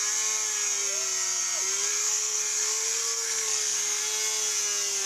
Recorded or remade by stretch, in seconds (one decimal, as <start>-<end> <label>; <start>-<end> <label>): 0.0-1.9 recorded; 1.9-4.0 remade; 4.0-5.1 recorded

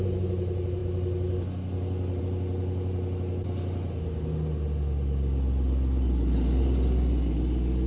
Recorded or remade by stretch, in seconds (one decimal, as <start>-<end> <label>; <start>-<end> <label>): 0.0-7.9 recorded

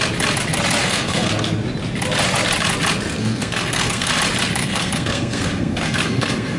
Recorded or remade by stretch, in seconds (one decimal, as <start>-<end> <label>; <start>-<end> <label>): 0.0-0.8 recorded; 0.8-1.3 remade; 1.3-3.2 recorded; 3.2-4.1 remade; 4.1-4.6 recorded; 4.6-6.6 remade

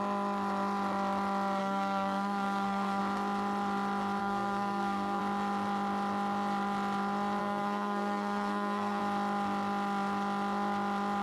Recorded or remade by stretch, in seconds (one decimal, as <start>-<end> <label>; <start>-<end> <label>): 0.0-1.6 recorded; 1.6-3.0 remade; 3.0-4.2 recorded; 4.2-5.2 remade; 5.2-7.4 recorded; 7.4-9.0 remade; 9.0-11.2 recorded